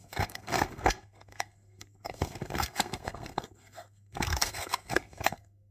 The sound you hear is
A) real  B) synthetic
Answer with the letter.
B